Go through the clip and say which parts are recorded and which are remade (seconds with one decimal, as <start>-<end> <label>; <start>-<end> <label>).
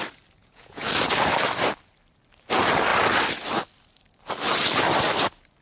0.0-0.4 recorded; 0.4-0.9 remade; 0.9-5.6 recorded